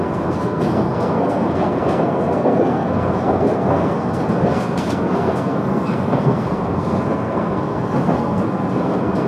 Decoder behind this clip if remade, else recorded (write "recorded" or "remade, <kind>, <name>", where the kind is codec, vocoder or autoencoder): remade, codec, SNAC